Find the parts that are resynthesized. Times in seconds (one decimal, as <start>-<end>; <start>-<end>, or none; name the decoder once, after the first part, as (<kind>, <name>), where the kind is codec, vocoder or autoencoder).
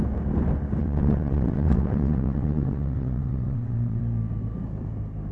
0.8-4.0 (vocoder, WaveNeXt)